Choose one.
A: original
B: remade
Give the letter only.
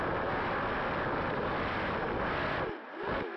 A